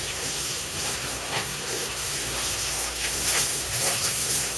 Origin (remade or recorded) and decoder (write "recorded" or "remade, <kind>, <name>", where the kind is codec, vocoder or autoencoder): remade, codec, SNAC